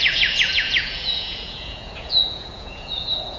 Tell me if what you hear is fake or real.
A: fake